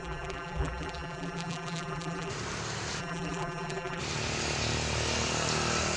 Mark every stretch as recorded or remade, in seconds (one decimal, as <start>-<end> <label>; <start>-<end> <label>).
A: 0.0-2.3 remade; 2.3-3.0 recorded; 3.0-4.0 remade; 4.0-6.0 recorded

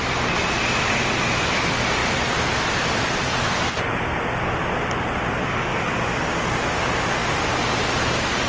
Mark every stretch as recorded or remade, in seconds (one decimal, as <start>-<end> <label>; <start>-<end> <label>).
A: 0.0-2.0 recorded; 2.0-3.8 remade; 3.8-5.7 recorded; 5.7-6.6 remade; 6.6-7.2 recorded; 7.2-8.5 remade

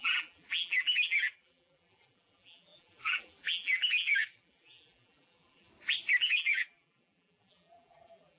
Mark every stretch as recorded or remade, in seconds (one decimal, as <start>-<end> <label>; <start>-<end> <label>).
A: 0.0-5.7 remade; 5.7-6.2 recorded; 6.2-8.4 remade

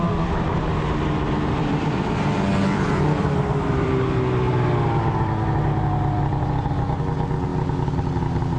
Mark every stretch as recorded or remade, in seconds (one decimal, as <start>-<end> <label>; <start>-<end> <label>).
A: 0.0-1.6 recorded; 1.6-3.9 remade; 3.9-8.6 recorded